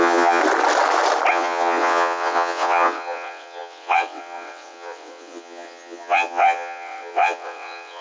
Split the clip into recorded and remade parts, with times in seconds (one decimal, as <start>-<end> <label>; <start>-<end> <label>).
0.0-0.4 remade; 0.4-1.3 recorded; 1.3-8.0 remade

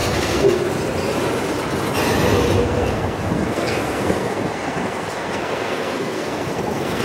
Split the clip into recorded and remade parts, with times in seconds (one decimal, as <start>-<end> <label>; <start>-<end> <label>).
0.0-0.6 remade; 0.6-2.6 recorded; 2.6-7.0 remade

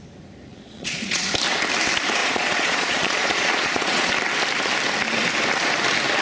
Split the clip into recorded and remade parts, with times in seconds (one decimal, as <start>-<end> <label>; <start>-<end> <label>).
0.0-0.5 recorded; 0.5-1.3 remade; 1.3-2.2 recorded; 2.2-4.1 remade; 4.1-6.2 recorded

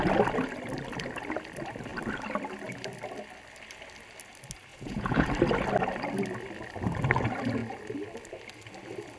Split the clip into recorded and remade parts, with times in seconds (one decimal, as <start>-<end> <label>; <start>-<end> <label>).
0.0-4.7 recorded; 4.7-5.3 remade; 5.3-9.2 recorded